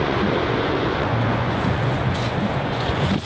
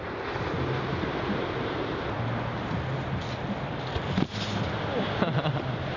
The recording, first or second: second